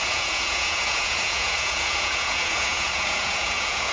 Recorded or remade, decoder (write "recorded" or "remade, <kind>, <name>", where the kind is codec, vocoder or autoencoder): remade, vocoder, Vocos